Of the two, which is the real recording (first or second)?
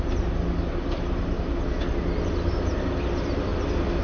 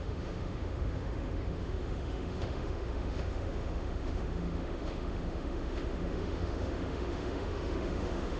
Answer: first